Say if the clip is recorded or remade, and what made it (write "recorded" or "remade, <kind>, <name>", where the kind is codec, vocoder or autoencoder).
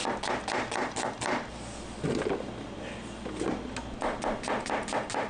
recorded